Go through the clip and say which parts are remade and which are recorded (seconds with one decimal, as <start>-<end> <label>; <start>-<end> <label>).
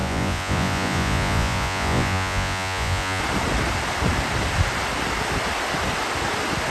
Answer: 0.0-3.2 remade; 3.2-6.7 recorded